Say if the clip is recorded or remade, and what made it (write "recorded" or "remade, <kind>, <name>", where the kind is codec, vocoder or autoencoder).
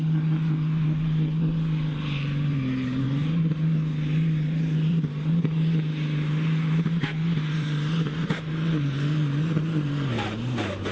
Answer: remade, vocoder, BigVGAN v2